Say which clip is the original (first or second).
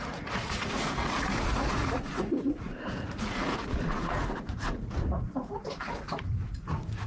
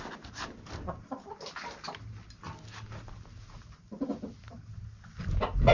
second